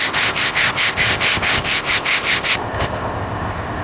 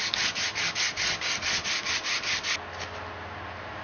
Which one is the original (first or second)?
second